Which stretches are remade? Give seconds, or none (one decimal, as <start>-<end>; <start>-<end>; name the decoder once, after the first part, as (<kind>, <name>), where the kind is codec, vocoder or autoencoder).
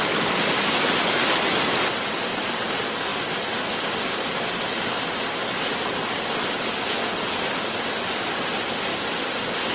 none